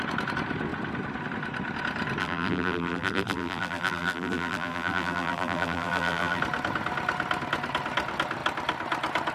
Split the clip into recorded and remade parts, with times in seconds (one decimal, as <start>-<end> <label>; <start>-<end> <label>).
0.0-2.2 recorded; 2.2-6.4 remade; 6.4-9.3 recorded